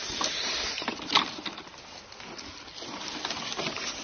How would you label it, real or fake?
real